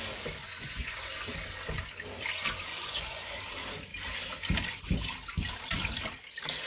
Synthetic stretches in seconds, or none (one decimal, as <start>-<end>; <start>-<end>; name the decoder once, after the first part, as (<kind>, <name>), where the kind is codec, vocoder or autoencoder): 0.4-1.3 (vocoder, Vocos); 2.7-3.4